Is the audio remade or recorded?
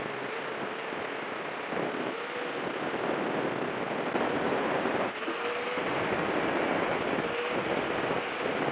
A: recorded